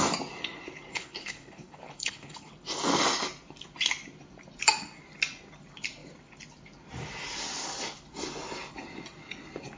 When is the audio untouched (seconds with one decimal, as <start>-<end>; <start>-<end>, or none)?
0.0-0.9; 2.5-9.8